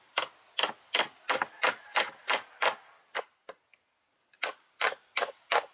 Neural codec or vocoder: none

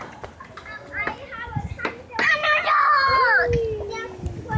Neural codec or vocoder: none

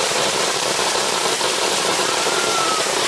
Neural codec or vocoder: vocoder, BigVGAN v2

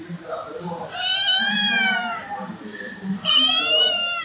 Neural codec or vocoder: vocoder, BigVGAN v2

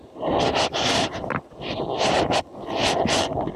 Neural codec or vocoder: none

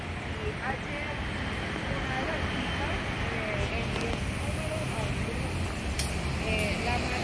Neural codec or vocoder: none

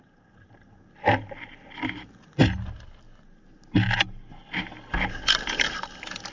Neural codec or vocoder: none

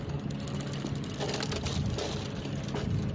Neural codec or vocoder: none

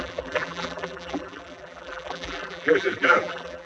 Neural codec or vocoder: vocoder, BigVGAN v2